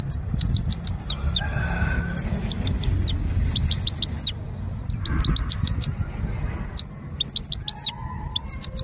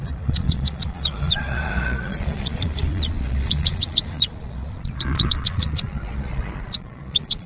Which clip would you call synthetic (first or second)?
second